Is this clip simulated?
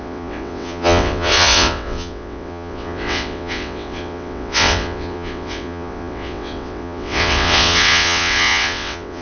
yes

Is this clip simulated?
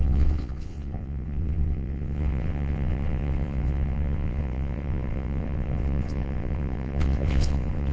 yes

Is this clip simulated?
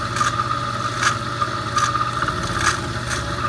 no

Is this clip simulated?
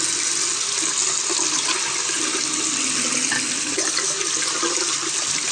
no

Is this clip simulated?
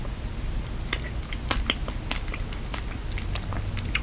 no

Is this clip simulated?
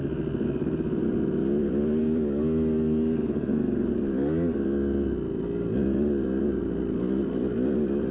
no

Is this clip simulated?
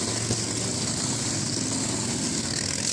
no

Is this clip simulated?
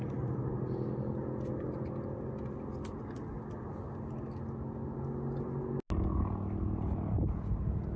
no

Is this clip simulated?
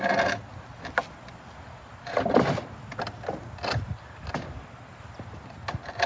no